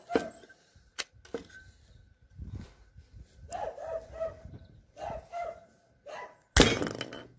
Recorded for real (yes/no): yes